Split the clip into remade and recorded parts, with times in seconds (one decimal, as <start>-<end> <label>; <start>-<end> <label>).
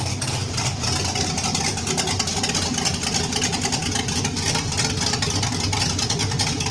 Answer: 0.0-6.7 recorded